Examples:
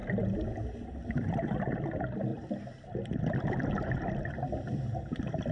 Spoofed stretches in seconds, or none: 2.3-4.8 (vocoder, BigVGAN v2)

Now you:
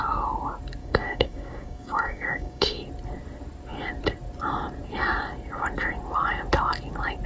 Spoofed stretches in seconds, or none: 0.8-2.8 (codec, DAC)

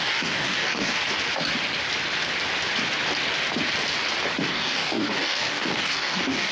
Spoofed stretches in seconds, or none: 0.0-1.0 (codec, DAC); 4.5-6.5

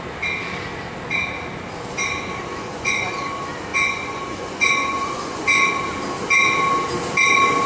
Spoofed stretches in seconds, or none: 2.5-3.1 (vocoder, Vocos); 3.7-5.7

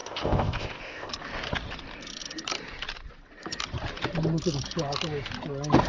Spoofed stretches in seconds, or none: 0.0-1.1 (codec, ZipCodec)

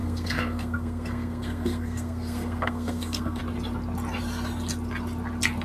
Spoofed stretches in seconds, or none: 0.0-3.4 (codec, SNAC)

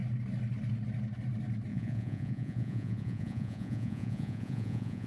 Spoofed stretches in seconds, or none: 1.7-5.1 (vocoder, Vocos)

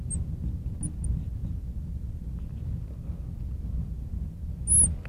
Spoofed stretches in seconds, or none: none